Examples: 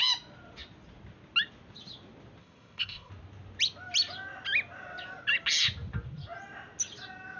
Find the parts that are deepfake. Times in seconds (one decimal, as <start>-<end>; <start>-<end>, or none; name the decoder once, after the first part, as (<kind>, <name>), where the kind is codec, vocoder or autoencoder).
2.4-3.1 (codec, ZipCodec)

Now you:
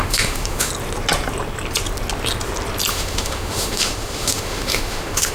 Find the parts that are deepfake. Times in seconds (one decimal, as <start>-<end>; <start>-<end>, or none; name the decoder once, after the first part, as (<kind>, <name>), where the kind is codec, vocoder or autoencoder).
0.0-0.7 (autoencoder, DAC-VAE); 2.9-5.3

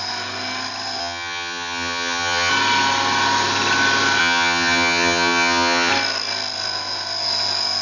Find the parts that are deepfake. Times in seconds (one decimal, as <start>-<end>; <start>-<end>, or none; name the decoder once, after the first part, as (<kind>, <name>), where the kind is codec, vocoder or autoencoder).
1.0-2.5 (vocoder, HiFi-GAN); 4.2-5.9

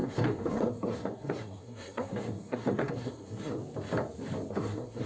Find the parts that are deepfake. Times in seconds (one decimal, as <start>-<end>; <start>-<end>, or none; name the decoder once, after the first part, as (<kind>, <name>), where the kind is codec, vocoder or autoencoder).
0.0-3.6 (codec, SNAC); 4.5-5.1